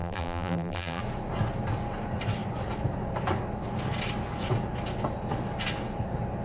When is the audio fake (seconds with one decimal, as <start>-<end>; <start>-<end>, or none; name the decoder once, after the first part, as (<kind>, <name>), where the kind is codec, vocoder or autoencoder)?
0.0-1.0 (vocoder, BigVGAN v2)